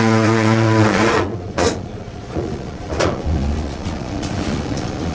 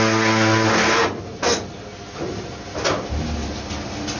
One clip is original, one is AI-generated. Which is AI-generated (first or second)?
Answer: first